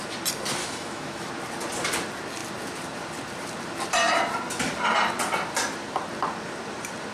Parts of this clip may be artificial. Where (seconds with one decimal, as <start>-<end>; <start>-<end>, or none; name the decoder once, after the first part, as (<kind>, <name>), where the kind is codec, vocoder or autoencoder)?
0.6-1.3 (autoencoder, DAC-VAE)